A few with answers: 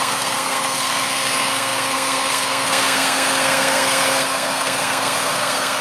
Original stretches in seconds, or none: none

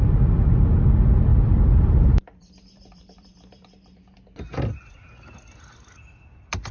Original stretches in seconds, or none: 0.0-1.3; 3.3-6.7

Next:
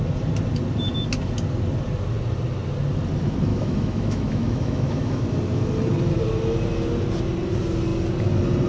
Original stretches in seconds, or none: 0.0-3.5; 5.2-8.7

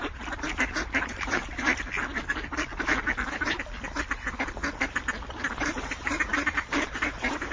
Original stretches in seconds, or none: 1.4-5.6

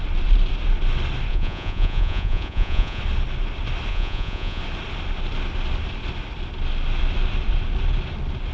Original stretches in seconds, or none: 0.0-1.3; 3.0-3.9; 4.6-8.5

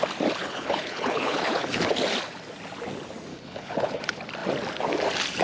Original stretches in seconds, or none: 0.0-0.4; 1.8-3.3; 4.0-5.4